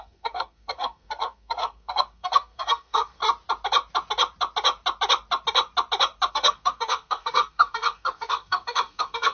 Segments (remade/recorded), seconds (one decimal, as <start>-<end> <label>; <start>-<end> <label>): 0.0-3.2 remade; 3.2-6.3 recorded; 6.3-9.3 remade